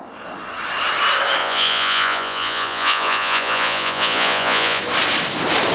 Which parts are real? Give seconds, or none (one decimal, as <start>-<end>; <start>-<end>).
0.0-1.4; 4.8-5.7